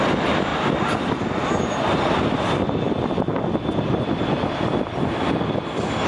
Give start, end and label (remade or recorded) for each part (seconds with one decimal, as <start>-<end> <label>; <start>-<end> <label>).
0.0-6.1 recorded